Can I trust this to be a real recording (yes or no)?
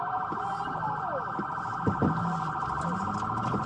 yes